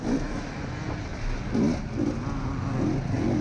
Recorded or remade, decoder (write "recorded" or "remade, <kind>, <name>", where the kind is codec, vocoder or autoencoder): recorded